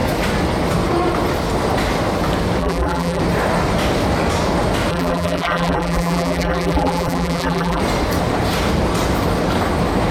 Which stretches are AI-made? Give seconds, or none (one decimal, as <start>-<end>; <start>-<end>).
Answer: 2.6-3.2; 4.9-7.8